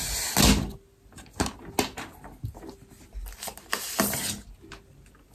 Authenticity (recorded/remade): recorded